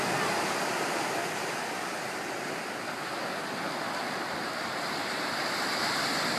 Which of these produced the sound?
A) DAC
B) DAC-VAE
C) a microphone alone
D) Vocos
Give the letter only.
C